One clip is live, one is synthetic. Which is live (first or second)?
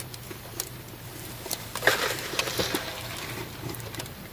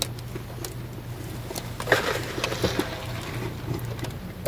second